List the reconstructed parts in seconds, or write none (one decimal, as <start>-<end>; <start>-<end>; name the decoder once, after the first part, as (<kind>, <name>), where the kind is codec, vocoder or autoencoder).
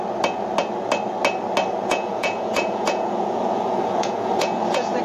1.8-5.0 (vocoder, Vocos)